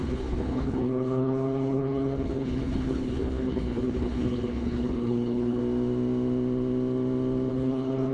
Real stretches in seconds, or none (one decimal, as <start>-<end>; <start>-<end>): 5.6-7.5